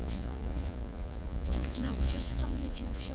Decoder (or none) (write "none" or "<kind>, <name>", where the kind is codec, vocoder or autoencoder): vocoder, Vocos